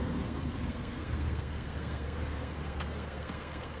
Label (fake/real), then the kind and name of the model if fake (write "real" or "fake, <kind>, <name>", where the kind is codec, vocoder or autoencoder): fake, codec, SNAC